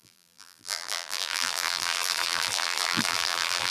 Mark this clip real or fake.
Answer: fake